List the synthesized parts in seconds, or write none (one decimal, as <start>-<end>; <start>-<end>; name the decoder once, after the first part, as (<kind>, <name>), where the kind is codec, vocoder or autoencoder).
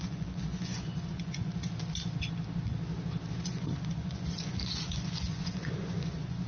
0.0-1.5 (vocoder, Vocos); 3.3-6.5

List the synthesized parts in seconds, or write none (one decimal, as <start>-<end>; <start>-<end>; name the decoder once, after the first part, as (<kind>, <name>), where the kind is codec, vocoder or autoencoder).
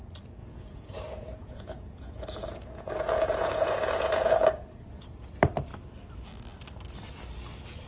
0.4-5.1 (vocoder, Vocos)